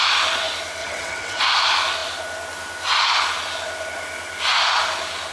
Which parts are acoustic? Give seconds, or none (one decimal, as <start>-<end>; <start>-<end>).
0.0-0.8; 1.4-5.3